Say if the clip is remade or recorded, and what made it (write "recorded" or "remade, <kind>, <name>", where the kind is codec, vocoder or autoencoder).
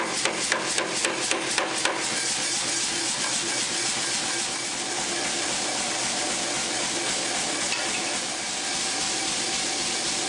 recorded